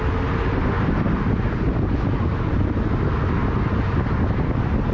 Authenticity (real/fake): real